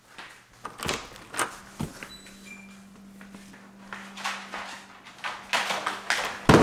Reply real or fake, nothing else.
real